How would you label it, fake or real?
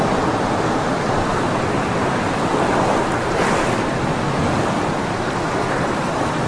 real